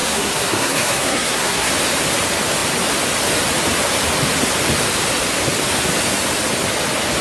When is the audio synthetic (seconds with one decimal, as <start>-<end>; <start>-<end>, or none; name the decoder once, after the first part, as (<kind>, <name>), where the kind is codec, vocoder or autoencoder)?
0.0-1.7 (codec, SNAC)